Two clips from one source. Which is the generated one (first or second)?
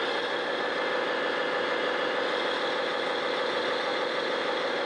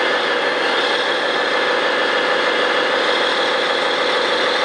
second